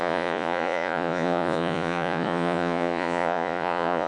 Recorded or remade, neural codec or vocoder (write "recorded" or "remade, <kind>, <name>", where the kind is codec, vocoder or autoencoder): remade, vocoder, Vocos